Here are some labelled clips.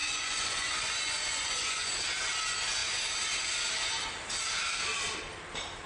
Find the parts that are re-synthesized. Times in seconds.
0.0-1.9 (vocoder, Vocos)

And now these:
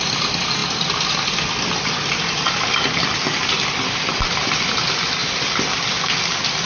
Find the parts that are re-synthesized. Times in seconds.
none

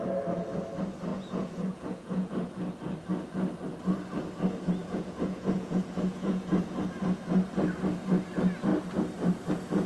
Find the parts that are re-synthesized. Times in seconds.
1.1-2.3 (vocoder, Vocos); 4.8-6.5

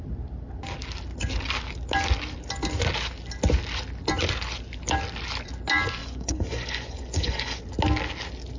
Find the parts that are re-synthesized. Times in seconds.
6.0-7.6 (vocoder, Vocos)

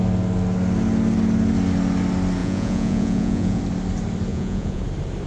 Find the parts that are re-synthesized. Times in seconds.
2.4-3.6 (vocoder, Vocos); 4.3-4.8

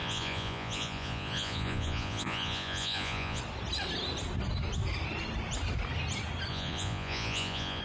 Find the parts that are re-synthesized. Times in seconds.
0.0-3.4 (vocoder, Vocos); 6.5-7.8